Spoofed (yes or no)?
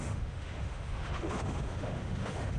yes